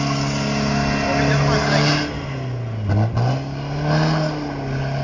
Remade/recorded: recorded